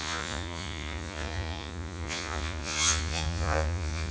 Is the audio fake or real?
fake